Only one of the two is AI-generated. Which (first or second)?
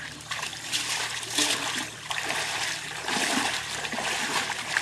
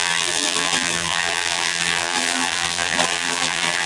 second